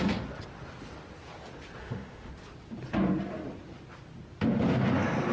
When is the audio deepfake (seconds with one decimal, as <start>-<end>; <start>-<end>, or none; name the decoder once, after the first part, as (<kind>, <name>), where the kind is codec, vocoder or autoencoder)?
1.8-2.3 (autoencoder, DAC-VAE)

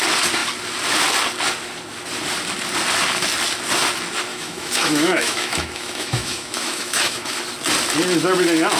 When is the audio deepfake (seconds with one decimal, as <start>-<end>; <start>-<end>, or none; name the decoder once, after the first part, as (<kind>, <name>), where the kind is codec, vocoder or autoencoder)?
4.3-7.4 (autoencoder, DAC-VAE)

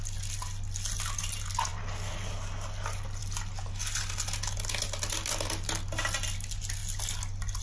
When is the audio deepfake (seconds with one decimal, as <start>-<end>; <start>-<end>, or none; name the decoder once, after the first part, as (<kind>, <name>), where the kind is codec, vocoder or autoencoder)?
none

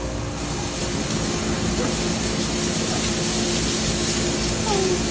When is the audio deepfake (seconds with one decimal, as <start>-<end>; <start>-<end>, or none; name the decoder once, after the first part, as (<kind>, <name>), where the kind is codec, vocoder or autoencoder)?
none

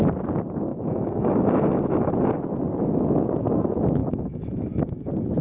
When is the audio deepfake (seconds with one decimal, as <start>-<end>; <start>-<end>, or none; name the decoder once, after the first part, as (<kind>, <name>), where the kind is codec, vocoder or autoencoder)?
0.7-2.4 (autoencoder, DAC-VAE); 4.0-4.8

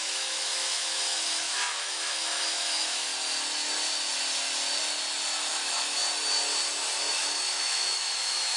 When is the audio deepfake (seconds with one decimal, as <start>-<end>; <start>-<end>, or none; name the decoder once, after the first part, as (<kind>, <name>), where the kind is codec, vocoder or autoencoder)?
0.0-3.1 (autoencoder, DAC-VAE); 5.5-6.0; 7.1-8.6

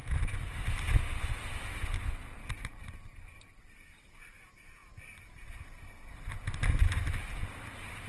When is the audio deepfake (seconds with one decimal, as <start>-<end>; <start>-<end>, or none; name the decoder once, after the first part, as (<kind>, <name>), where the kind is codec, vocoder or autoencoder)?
none